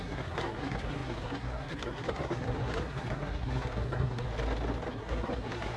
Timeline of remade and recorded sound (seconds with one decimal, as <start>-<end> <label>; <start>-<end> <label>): 0.0-4.3 remade; 4.3-4.9 recorded; 4.9-5.8 remade